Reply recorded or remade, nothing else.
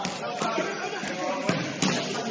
recorded